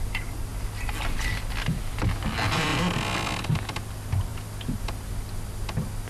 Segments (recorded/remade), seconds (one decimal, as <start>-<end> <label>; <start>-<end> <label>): 0.0-6.1 recorded